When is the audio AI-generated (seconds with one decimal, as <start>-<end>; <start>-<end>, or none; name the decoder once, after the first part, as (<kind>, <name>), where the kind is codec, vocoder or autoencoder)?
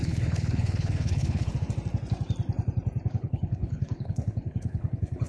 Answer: 0.0-1.5 (codec, HILCodec); 3.1-5.3